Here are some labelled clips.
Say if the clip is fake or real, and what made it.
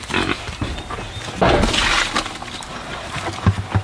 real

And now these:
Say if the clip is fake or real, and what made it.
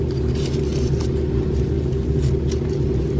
real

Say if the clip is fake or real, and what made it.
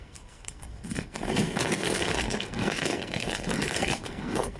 fake, codec, SNAC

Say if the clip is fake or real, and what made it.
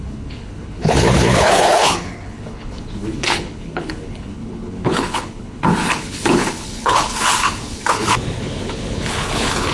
fake, codec, HILCodec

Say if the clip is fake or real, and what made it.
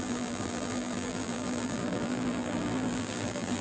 fake, vocoder, BigVGAN v2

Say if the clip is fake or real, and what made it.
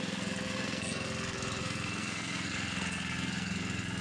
fake, codec, SNAC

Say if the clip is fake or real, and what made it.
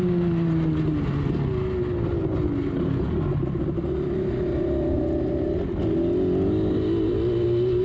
real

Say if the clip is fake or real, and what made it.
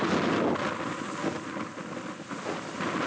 real